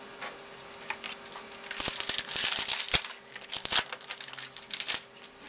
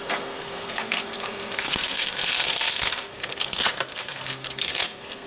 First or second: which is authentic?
first